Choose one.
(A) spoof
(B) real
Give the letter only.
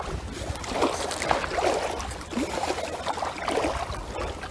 B